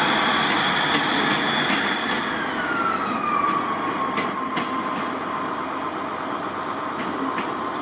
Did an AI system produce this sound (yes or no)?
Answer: no